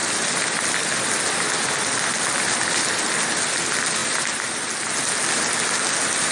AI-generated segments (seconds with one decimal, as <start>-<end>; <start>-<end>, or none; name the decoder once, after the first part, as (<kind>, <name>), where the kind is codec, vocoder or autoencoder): none